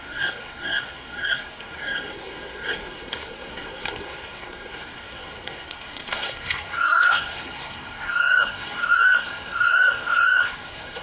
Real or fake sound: fake